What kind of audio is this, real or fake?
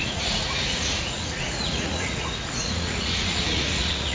fake